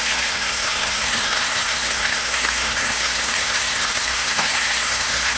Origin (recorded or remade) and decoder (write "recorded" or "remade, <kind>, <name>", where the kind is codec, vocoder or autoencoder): remade, codec, SNAC